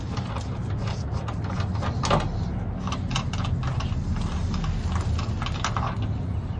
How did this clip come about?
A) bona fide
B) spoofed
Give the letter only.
A